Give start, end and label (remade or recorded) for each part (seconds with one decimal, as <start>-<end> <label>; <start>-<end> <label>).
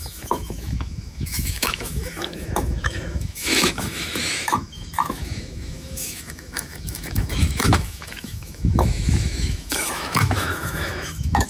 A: 0.0-11.5 remade